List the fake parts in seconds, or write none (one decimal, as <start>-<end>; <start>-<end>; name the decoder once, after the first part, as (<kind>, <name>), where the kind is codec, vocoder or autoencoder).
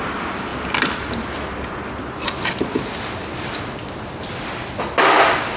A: none